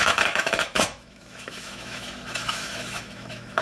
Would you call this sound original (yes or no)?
no